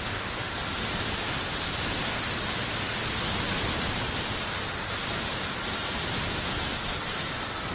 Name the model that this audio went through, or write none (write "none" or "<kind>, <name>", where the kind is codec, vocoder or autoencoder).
none